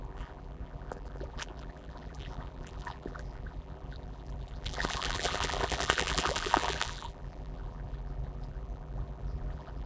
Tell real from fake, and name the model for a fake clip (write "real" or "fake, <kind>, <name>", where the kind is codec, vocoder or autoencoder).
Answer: fake, vocoder, BigVGAN v2